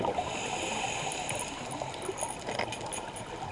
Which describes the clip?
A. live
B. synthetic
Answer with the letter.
A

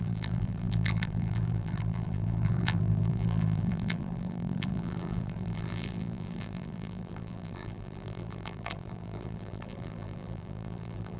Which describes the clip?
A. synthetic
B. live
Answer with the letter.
A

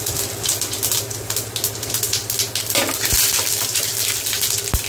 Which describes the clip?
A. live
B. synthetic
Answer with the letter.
A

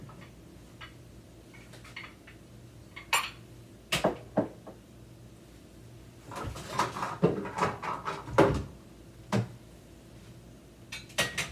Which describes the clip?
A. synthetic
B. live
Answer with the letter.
B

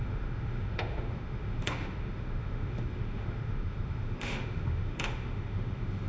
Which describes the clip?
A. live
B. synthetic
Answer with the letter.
B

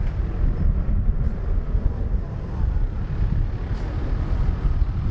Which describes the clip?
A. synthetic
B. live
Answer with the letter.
B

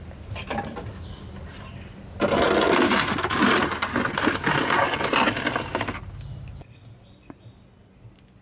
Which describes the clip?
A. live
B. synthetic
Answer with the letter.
A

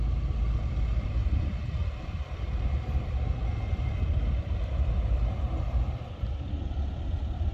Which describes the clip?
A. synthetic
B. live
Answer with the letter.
A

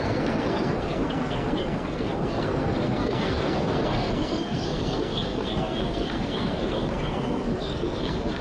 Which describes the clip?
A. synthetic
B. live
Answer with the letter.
A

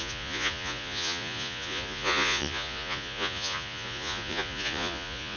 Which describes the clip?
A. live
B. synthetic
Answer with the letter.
B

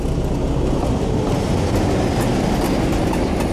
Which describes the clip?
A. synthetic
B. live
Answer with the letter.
B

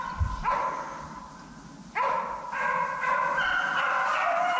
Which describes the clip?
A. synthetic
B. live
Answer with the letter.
B